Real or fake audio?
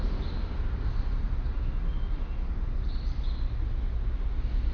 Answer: real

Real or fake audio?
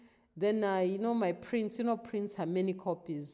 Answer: real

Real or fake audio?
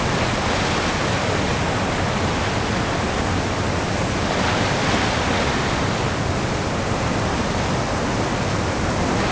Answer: real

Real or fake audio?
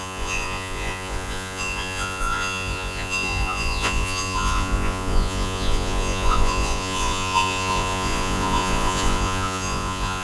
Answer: fake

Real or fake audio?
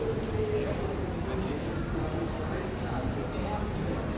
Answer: real